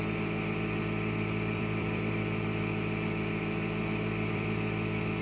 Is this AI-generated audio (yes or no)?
yes